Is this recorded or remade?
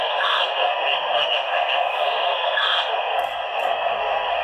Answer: remade